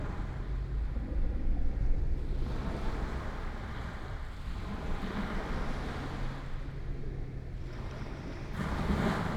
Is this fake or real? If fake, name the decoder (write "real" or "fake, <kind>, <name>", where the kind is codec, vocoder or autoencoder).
real